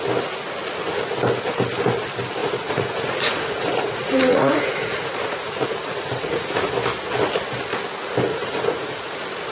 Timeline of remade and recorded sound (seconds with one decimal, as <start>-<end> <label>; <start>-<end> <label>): 0.0-2.4 recorded; 2.4-6.7 remade; 6.7-8.3 recorded; 8.3-9.1 remade; 9.1-9.5 recorded